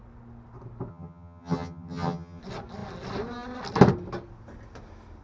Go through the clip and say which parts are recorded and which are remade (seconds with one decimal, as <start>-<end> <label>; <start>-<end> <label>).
0.0-0.9 recorded; 0.9-2.4 remade; 2.4-5.2 recorded